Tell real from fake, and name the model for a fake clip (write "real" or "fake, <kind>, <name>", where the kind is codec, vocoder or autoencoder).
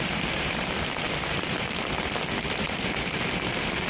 real